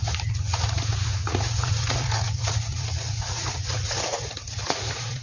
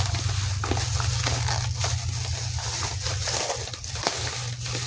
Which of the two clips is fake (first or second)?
first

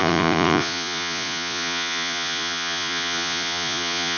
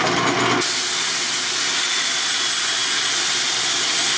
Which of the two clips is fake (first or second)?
first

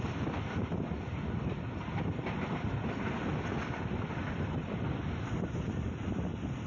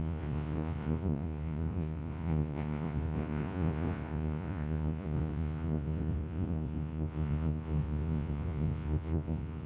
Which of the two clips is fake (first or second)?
second